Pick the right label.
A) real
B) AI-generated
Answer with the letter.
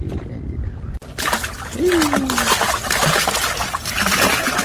A